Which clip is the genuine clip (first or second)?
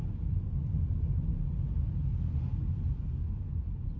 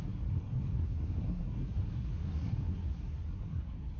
first